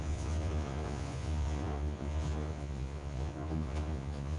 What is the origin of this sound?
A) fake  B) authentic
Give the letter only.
A